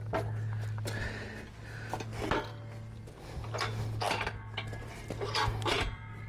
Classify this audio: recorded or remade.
recorded